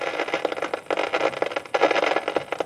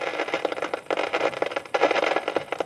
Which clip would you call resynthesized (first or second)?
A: second